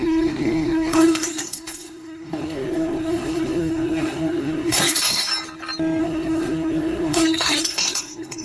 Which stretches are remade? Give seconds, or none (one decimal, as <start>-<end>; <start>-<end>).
0.0-5.3; 6.0-8.4